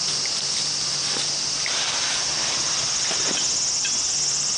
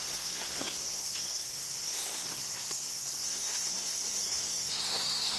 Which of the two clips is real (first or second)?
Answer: first